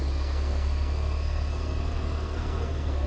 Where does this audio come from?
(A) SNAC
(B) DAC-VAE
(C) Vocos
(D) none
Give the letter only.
A